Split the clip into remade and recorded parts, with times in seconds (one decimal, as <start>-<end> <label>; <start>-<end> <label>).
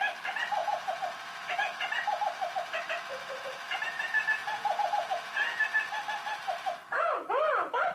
0.0-0.6 recorded; 0.6-1.8 remade; 1.8-4.4 recorded; 4.4-5.6 remade; 5.6-7.9 recorded